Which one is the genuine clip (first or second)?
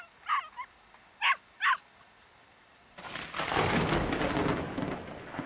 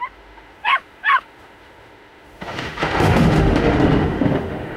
first